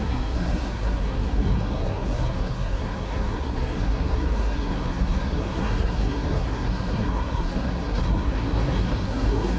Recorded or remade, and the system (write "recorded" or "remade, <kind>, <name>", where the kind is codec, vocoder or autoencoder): remade, codec, SNAC